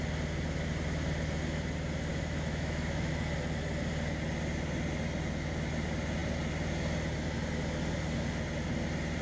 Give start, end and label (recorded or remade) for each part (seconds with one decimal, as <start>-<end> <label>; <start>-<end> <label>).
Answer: 0.0-2.1 recorded; 2.1-3.1 remade; 3.1-9.2 recorded